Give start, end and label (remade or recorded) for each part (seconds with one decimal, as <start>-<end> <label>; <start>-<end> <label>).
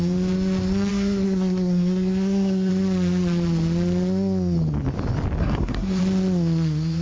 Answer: 0.0-0.9 recorded; 0.9-2.7 remade; 2.7-5.4 recorded; 5.4-6.0 remade; 6.0-7.0 recorded